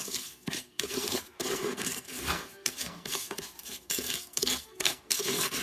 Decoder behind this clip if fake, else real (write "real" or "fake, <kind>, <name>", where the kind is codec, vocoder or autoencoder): fake, codec, SNAC